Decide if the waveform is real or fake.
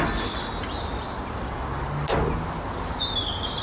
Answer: real